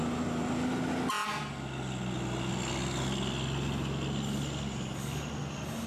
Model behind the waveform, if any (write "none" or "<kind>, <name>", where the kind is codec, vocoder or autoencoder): none